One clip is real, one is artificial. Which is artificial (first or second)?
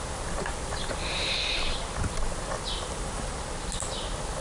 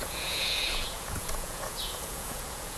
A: second